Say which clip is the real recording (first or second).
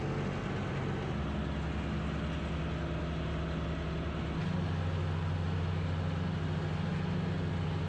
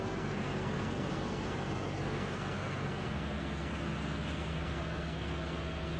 first